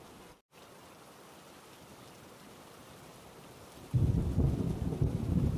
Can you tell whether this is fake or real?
fake